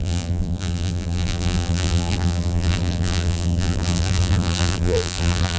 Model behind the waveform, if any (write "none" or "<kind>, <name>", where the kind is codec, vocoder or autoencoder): vocoder, BigVGAN v2